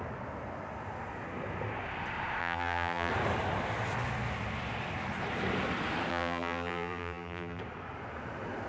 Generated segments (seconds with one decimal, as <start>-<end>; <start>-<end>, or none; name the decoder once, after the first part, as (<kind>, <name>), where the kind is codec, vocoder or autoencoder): 2.4-3.1 (vocoder, BigVGAN v2); 6.1-7.6